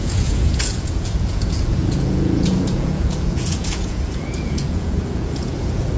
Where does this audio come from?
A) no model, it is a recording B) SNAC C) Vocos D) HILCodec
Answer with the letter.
C